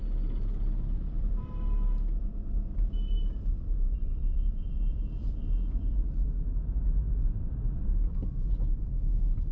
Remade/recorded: remade